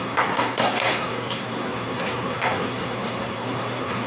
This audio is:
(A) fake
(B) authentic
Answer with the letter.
A